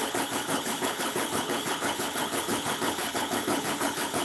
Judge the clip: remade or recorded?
remade